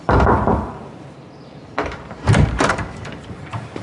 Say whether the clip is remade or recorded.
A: remade